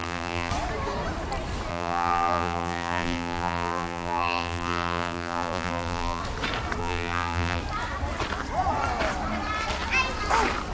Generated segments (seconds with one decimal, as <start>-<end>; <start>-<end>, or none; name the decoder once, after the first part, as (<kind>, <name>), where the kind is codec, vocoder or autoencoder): 0.0-0.5 (vocoder, BigVGAN v2); 1.7-6.2; 6.8-7.6